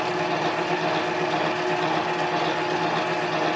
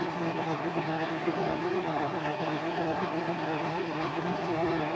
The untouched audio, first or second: first